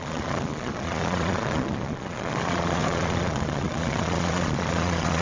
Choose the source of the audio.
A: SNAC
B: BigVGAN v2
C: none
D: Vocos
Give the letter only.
D